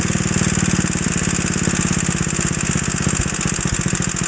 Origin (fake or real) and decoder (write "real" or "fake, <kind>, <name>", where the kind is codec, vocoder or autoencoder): real